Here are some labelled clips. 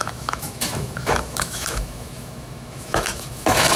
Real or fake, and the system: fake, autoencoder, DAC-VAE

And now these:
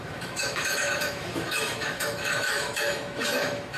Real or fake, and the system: fake, autoencoder, DAC-VAE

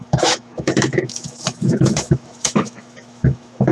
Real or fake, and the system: fake, autoencoder, DAC-VAE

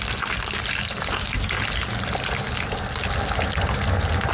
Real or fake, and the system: real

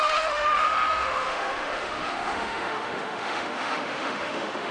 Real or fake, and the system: fake, autoencoder, DAC-VAE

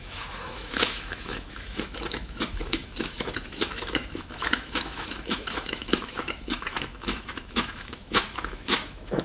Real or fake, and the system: fake, autoencoder, DAC-VAE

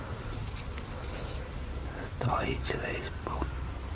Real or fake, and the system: real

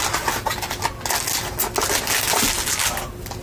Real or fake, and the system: real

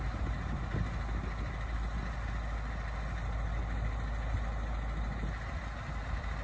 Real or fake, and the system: real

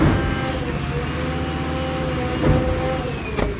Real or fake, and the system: real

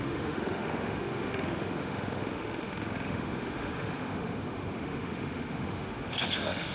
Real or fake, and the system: fake, autoencoder, DAC-VAE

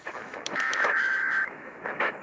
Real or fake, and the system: fake, autoencoder, DAC-VAE